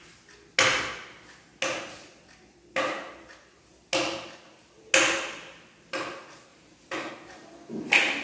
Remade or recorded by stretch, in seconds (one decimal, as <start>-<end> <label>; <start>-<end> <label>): 0.0-6.5 recorded; 6.5-7.1 remade; 7.1-8.2 recorded